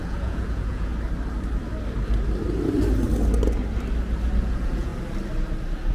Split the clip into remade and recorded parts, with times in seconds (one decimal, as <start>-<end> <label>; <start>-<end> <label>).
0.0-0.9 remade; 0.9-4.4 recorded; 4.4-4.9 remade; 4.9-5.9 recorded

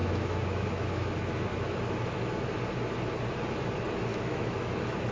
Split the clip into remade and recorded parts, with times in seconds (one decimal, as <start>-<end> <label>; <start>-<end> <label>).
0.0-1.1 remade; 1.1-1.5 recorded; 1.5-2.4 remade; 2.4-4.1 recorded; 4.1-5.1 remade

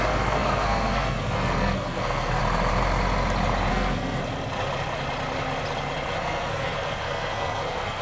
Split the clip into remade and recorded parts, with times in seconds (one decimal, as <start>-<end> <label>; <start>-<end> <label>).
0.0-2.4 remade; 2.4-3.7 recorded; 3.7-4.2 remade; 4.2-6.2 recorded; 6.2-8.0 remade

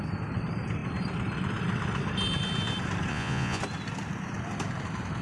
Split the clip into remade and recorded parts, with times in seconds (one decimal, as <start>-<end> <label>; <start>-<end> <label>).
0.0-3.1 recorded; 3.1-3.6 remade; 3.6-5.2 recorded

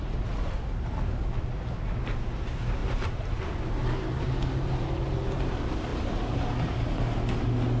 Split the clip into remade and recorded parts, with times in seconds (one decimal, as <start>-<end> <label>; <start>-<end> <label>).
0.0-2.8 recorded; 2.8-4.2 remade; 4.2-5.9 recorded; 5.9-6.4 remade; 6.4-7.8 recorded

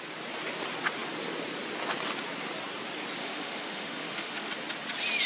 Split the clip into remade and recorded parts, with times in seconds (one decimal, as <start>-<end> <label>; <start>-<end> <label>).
0.0-3.2 recorded; 3.2-4.5 remade; 4.5-5.3 recorded